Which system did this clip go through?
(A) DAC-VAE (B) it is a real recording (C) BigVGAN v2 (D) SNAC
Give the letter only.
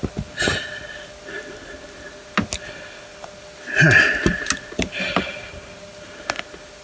B